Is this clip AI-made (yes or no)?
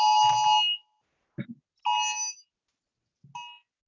no